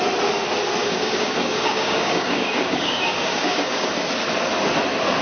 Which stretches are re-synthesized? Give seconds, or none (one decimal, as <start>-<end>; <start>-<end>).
0.8-3.9